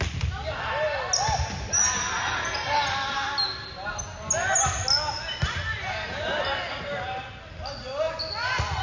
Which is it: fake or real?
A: real